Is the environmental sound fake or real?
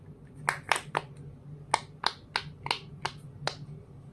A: real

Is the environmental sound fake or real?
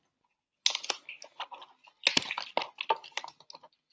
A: real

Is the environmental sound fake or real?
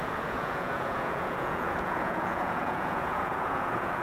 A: fake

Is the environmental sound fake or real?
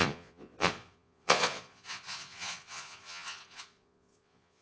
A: fake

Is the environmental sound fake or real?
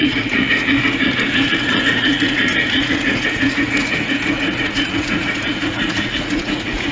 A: fake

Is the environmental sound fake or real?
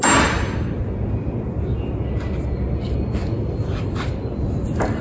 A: real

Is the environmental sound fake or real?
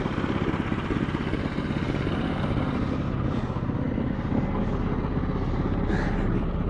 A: real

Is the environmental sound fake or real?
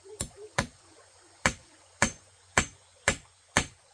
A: fake